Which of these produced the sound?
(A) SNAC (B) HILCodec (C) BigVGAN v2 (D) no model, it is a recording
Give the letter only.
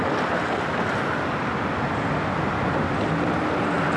D